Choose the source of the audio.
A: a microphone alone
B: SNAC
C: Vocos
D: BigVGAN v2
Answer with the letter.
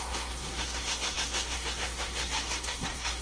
B